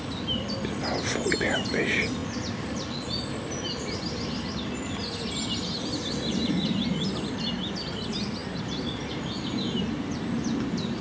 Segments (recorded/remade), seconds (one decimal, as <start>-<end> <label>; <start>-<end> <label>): 0.0-11.0 recorded